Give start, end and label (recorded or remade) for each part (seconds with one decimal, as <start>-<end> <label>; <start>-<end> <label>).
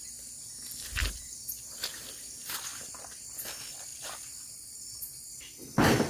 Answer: 0.0-3.9 recorded; 3.9-4.7 remade; 4.7-6.1 recorded